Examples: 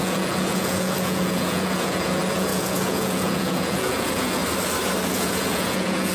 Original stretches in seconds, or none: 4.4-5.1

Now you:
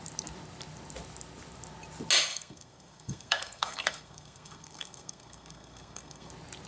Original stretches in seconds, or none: 0.0-2.3; 6.3-6.7

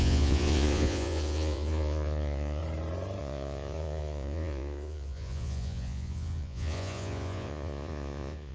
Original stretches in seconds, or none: 2.6-3.2

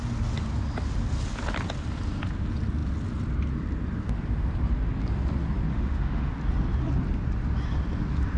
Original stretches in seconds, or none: 0.0-5.7; 6.3-8.4

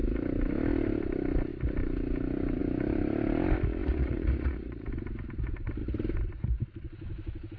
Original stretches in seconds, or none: 0.0-3.8; 4.9-7.6